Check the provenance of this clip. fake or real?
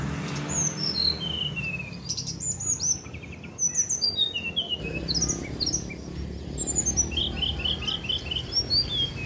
real